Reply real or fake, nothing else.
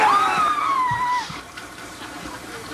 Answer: fake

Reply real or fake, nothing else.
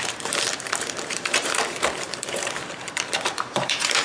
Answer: fake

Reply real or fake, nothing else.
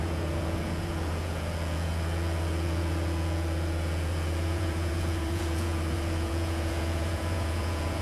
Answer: fake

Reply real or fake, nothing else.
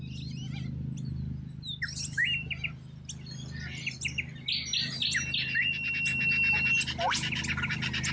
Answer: real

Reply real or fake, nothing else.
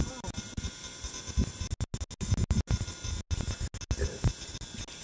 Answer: real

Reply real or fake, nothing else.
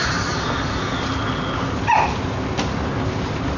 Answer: real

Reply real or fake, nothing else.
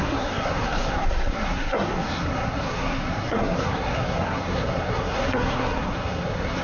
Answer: fake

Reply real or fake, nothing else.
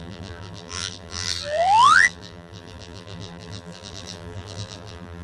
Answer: fake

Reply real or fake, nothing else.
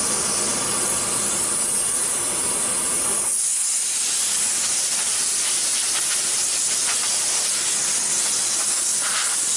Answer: real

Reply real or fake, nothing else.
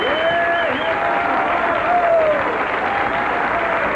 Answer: real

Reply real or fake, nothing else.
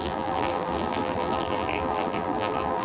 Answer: fake